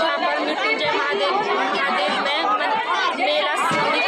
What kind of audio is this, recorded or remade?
recorded